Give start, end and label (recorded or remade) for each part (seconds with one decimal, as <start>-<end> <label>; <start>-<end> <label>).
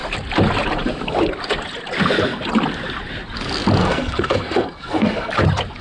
0.0-3.8 recorded; 3.8-5.3 remade; 5.3-5.8 recorded